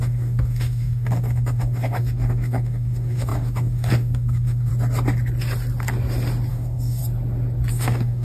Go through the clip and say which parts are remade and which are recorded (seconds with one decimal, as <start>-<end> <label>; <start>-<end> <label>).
0.0-4.7 remade; 4.7-6.5 recorded; 6.5-7.0 remade; 7.0-7.7 recorded; 7.7-8.2 remade